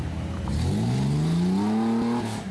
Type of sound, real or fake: real